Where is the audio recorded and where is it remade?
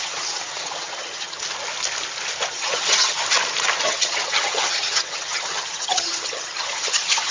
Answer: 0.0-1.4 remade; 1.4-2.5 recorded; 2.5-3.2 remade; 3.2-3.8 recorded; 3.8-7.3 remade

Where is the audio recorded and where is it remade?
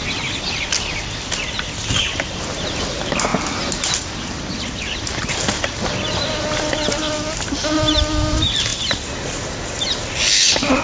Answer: 0.0-10.8 recorded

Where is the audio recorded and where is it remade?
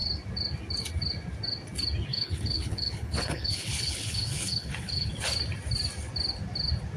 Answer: 0.0-2.1 recorded; 2.1-5.1 remade; 5.1-7.0 recorded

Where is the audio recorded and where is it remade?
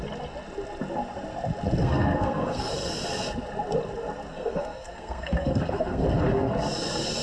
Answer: 0.0-1.8 recorded; 1.8-2.7 remade; 2.7-4.3 recorded; 4.3-6.5 remade; 6.5-7.2 recorded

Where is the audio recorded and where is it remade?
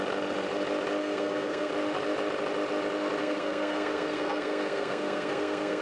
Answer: 0.0-1.0 recorded; 1.0-1.7 remade; 1.7-3.2 recorded; 3.2-5.8 remade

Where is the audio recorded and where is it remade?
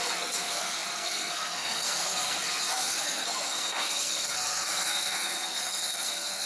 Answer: 0.0-6.5 remade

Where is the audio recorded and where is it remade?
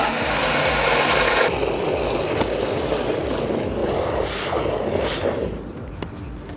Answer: 0.0-6.6 recorded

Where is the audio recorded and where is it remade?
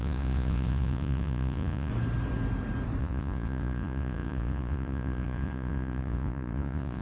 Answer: 0.0-1.9 remade; 1.9-3.0 recorded; 3.0-7.0 remade